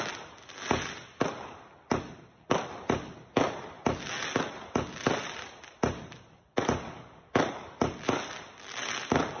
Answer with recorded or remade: recorded